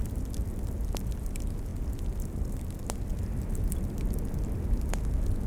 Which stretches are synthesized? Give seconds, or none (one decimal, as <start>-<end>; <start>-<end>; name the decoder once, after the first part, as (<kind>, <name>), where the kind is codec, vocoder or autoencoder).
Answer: none

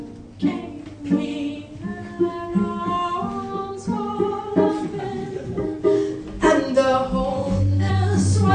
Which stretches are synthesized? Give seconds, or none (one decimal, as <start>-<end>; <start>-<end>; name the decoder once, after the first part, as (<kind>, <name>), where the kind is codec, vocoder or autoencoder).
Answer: 5.2-5.8 (codec, SNAC); 7.3-7.9

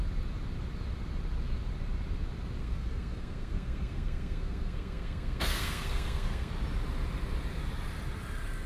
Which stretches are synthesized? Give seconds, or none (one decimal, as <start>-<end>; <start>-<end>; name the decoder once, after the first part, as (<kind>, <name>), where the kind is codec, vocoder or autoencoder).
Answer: 2.6-6.5 (codec, SNAC)

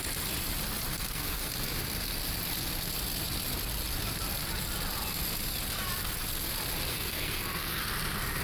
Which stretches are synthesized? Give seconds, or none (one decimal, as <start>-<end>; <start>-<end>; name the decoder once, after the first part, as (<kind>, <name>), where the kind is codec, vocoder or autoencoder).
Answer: 0.9-1.5 (codec, SNAC); 6.9-7.8

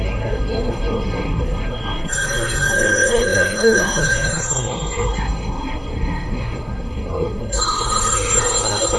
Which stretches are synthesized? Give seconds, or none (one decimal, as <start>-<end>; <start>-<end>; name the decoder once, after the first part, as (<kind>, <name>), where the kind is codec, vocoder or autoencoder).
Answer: 0.0-9.0 (codec, SNAC)

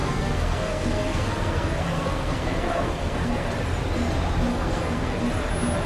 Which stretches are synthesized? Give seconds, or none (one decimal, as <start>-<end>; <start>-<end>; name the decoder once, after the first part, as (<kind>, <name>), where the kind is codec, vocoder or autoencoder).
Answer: 0.0-3.5 (codec, SNAC); 4.5-5.3